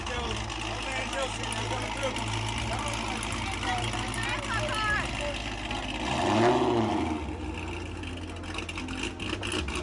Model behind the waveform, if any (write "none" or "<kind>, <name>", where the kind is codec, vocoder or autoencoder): none